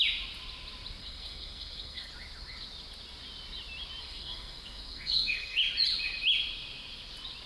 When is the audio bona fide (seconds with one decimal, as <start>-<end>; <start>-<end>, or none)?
0.0-1.0; 2.1-4.0; 5.6-7.5